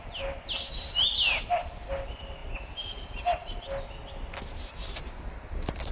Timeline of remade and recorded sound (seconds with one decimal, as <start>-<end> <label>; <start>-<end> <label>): 0.0-5.9 recorded